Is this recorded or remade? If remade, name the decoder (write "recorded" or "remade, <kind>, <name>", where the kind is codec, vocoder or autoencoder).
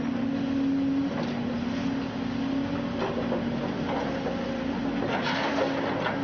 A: recorded